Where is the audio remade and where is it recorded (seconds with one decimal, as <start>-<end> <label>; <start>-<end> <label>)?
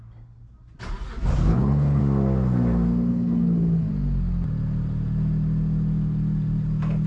0.0-1.5 recorded; 1.5-2.0 remade; 2.0-3.1 recorded; 3.1-3.9 remade; 3.9-7.1 recorded